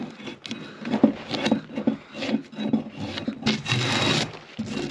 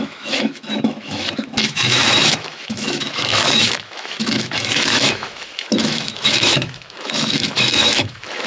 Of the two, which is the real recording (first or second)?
first